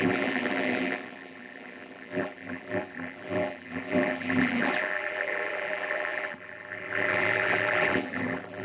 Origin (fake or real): fake